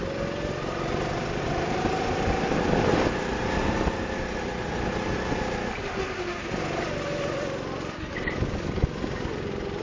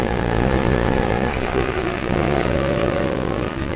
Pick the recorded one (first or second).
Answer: first